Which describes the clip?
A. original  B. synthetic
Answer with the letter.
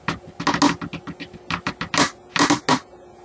A